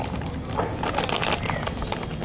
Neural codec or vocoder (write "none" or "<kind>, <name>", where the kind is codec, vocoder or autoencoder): none